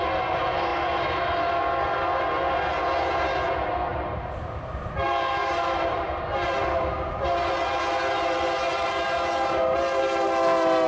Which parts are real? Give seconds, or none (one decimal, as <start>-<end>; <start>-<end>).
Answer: 0.0-3.9; 6.5-10.9